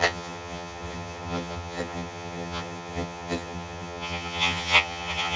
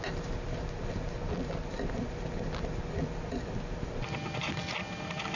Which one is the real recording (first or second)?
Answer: second